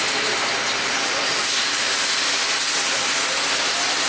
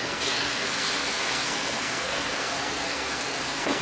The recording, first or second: first